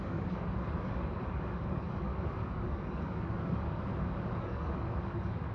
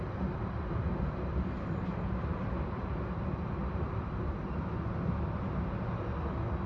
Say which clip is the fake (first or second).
first